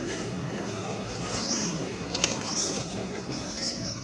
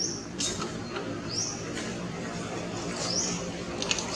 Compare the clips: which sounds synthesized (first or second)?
first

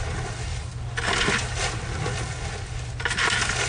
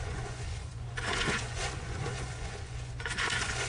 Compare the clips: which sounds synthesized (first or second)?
second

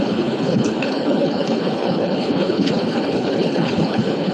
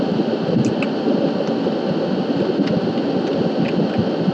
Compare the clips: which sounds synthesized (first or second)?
first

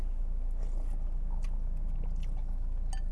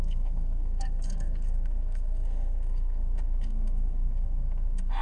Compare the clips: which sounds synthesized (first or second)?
second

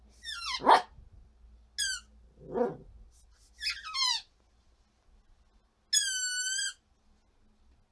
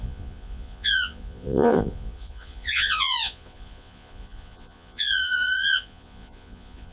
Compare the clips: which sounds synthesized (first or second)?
second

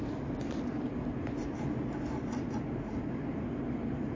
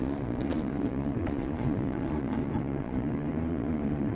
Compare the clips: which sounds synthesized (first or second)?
second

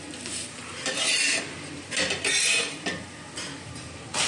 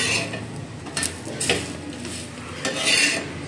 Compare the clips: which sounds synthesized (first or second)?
first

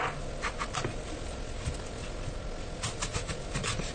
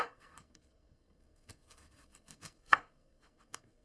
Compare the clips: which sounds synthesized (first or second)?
second